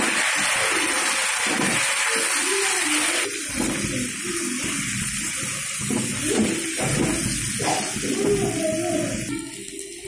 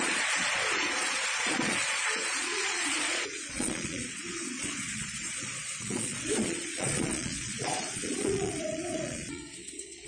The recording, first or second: first